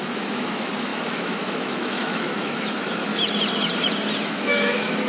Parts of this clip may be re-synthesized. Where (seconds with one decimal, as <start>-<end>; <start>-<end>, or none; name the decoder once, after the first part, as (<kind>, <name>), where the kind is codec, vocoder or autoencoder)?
0.0-3.1 (autoencoder, DAC-VAE); 4.2-5.1

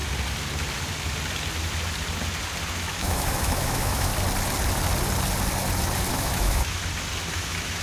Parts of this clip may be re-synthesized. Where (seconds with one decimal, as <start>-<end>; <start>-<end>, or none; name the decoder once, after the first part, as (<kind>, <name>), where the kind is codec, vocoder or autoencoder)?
2.7-4.1 (autoencoder, DAC-VAE); 6.1-6.8; 7.3-7.8

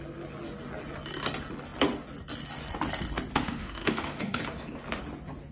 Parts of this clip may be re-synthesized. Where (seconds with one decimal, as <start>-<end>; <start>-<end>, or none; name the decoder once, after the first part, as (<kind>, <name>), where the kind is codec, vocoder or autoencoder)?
3.3-4.4 (autoencoder, DAC-VAE)

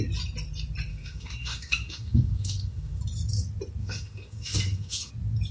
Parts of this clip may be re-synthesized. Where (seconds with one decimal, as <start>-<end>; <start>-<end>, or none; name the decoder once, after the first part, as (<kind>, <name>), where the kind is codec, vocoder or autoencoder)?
0.9-3.0 (autoencoder, DAC-VAE); 3.8-5.1

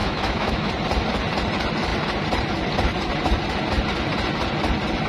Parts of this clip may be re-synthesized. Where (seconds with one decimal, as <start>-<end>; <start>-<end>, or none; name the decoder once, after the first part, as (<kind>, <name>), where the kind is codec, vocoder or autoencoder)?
0.0-0.7 (autoencoder, DAC-VAE)

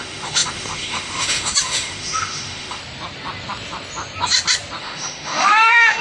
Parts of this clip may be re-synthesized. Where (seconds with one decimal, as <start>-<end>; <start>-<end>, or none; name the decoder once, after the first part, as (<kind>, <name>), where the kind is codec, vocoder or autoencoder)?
0.0-2.8 (autoencoder, DAC-VAE); 4.8-6.0

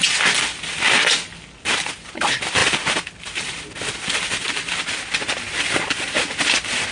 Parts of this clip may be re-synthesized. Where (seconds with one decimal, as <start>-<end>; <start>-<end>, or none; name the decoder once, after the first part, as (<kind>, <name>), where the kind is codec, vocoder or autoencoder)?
none

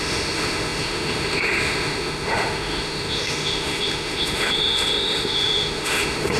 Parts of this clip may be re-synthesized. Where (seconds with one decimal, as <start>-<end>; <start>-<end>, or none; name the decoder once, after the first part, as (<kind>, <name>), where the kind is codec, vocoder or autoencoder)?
0.0-6.4 (autoencoder, DAC-VAE)